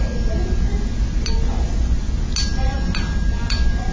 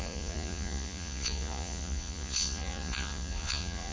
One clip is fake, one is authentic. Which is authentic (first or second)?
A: first